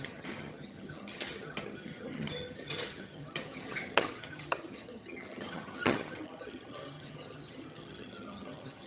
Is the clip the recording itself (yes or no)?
no